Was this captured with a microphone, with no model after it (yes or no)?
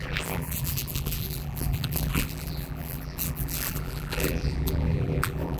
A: no